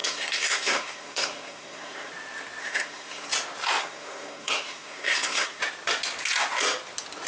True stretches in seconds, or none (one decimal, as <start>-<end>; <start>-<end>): 2.1-2.6; 3.3-3.8; 5.6-7.3